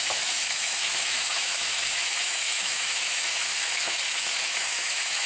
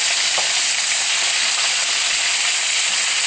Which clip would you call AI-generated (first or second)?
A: first